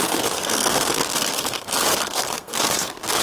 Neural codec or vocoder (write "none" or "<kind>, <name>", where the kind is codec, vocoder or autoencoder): codec, SNAC